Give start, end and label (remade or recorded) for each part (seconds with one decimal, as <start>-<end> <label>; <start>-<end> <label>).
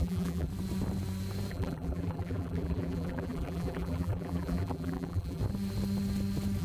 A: 0.0-0.5 remade; 0.5-1.5 recorded; 1.5-5.4 remade; 5.4-6.6 recorded